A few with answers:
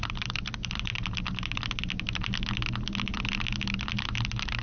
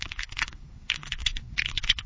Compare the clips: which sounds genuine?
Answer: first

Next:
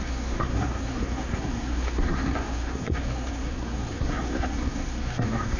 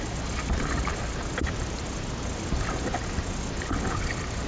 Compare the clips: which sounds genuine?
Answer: second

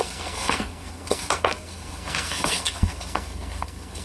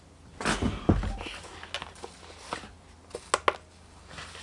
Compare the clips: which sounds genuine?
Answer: second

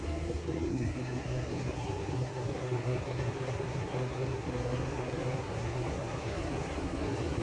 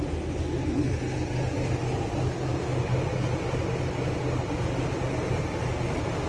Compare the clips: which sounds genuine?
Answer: second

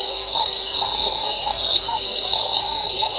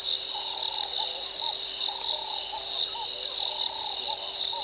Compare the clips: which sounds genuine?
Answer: second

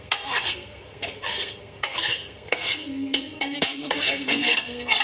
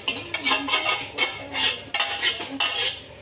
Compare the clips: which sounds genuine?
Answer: second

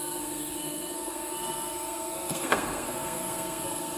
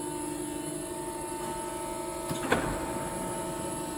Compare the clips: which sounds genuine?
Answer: second